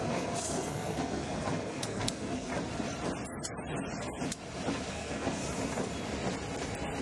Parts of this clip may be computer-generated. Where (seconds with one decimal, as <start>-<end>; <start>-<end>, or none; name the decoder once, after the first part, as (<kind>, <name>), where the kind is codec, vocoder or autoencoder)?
0.0-2.5 (codec, SNAC); 4.9-5.4